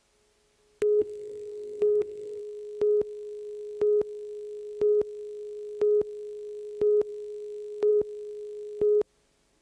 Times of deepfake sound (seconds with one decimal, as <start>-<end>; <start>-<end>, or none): 1.0-2.4